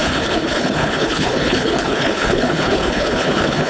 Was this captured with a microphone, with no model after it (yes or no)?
no